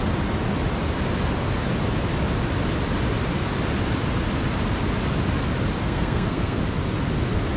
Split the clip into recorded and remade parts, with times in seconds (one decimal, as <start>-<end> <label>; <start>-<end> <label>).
0.0-5.8 recorded; 5.8-6.6 remade; 6.6-7.6 recorded